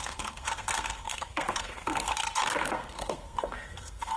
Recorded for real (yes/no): no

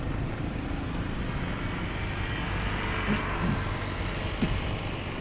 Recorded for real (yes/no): yes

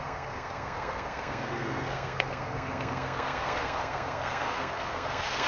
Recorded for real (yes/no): no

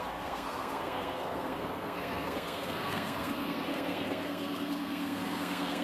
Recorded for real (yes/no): no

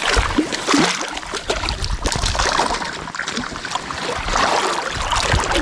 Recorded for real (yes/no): yes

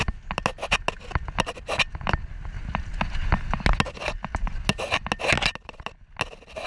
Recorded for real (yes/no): yes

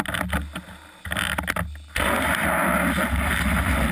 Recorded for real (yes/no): yes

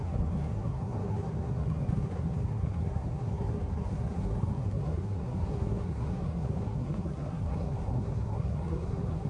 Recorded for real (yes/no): no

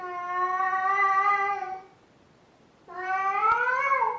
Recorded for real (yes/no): yes